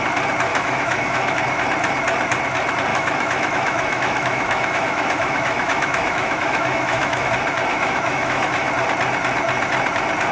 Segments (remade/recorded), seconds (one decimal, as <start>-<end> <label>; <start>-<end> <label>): 0.0-0.5 recorded; 0.5-1.4 remade; 1.4-2.9 recorded; 2.9-7.3 remade; 7.3-7.7 recorded; 7.7-8.7 remade; 8.7-10.3 recorded